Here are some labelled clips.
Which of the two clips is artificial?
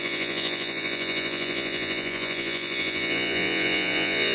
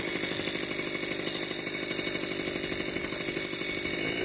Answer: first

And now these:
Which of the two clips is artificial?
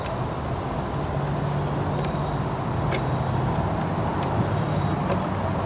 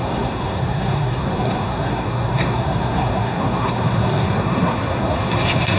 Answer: second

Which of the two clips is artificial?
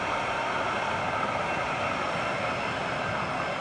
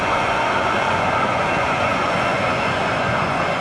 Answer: second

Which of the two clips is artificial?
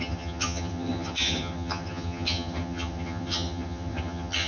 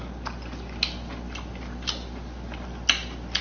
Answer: first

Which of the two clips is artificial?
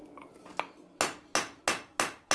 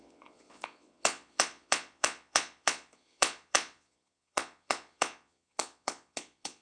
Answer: second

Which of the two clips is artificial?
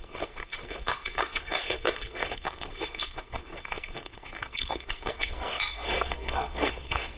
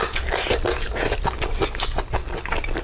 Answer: first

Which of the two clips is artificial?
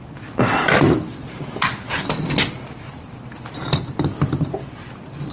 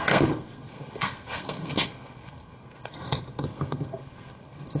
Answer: second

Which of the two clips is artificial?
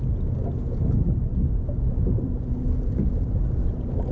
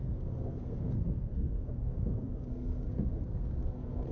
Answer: second